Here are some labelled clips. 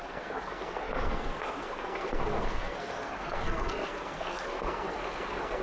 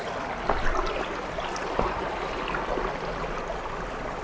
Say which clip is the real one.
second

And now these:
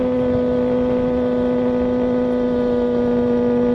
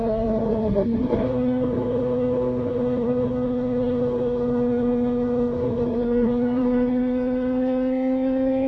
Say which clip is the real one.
first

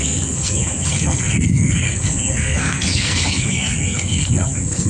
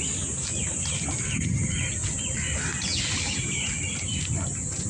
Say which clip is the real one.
second